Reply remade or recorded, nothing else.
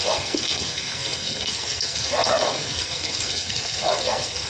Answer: remade